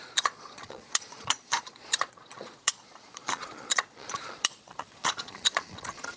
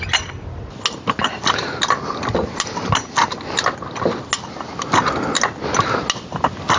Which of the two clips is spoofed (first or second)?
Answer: first